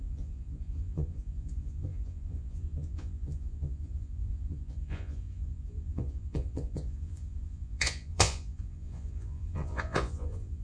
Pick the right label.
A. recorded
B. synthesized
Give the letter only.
B